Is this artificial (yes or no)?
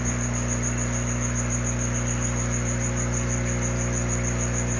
yes